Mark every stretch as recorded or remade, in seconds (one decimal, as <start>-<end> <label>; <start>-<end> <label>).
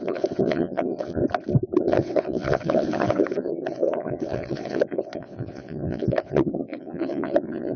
0.0-1.2 remade; 1.2-1.8 recorded; 1.8-7.8 remade